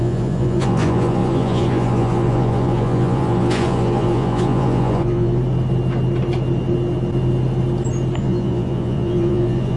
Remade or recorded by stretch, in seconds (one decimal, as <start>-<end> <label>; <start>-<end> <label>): 0.0-5.4 remade; 5.4-8.2 recorded; 8.2-9.8 remade